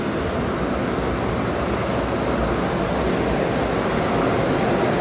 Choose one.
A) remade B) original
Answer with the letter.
B